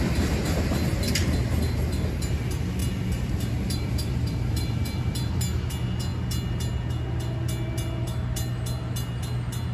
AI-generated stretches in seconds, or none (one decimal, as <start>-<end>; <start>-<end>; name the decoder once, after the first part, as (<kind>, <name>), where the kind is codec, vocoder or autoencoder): 2.8-5.3 (vocoder, BigVGAN v2)